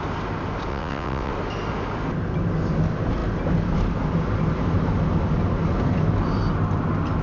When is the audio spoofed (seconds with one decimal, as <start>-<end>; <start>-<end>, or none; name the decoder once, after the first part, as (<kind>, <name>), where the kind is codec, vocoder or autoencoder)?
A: 0.7-1.3 (vocoder, WaveNeXt)

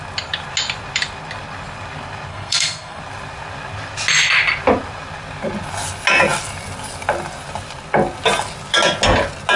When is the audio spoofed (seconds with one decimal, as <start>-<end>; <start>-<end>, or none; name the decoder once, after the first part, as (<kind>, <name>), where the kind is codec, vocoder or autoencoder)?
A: 2.3-3.0 (codec, SNAC)

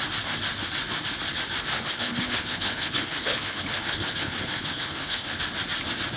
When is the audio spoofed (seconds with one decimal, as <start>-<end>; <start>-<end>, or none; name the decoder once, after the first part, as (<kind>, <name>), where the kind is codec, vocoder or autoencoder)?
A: 1.7-5.4 (codec, HILCodec)

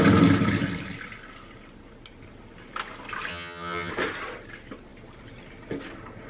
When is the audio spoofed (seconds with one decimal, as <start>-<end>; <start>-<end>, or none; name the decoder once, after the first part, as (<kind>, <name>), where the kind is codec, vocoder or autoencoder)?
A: 3.3-3.9 (vocoder, HiFi-GAN)

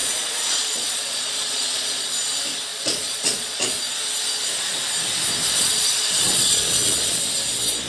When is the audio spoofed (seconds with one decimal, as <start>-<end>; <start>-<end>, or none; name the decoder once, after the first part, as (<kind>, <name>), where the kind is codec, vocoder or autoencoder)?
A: 0.0-2.1 (vocoder, Vocos); 2.7-3.8; 5.5-7.2

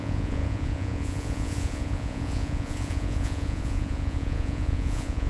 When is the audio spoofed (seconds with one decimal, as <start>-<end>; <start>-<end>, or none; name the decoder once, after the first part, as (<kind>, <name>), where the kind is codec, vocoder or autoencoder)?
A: 0.0-5.3 (vocoder, Vocos)